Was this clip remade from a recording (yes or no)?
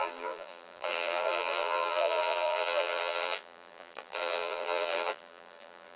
yes